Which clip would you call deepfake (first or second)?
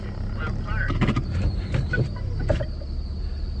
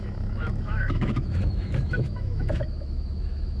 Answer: second